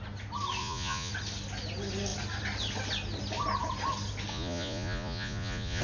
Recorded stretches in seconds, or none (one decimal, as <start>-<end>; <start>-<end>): 0.0-0.6; 1.1-4.3